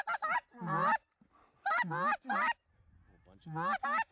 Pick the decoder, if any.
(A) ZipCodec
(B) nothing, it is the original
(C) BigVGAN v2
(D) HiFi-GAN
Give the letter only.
B